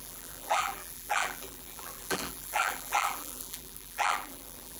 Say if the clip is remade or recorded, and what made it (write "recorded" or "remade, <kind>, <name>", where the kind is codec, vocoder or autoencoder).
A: remade, vocoder, BigVGAN v2